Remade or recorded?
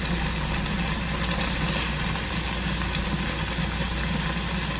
recorded